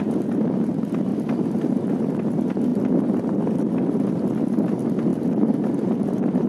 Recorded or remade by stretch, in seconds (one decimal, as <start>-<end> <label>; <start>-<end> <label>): 0.0-1.1 recorded; 1.1-1.9 remade; 1.9-2.7 recorded; 2.7-4.0 remade; 4.0-5.1 recorded; 5.1-5.9 remade; 5.9-6.5 recorded